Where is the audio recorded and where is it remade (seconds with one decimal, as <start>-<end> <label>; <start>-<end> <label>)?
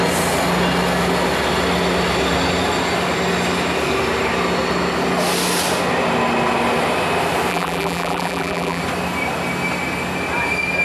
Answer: 0.0-7.5 recorded; 7.5-8.8 remade; 8.8-10.8 recorded